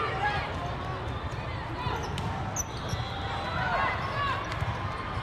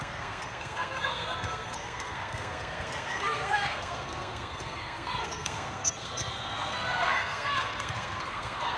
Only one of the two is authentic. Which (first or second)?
first